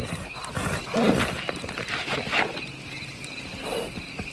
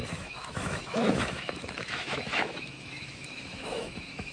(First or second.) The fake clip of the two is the second